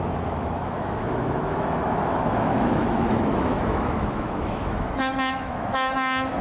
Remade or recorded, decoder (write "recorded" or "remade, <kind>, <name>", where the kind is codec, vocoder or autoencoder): remade, autoencoder, DAC-VAE